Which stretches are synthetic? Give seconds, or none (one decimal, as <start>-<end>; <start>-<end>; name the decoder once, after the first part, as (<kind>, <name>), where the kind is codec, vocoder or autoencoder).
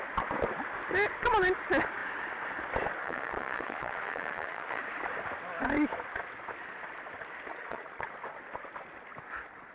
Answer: 3.0-4.8 (vocoder, Vocos); 7.5-8.1